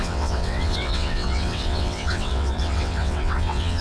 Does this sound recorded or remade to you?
remade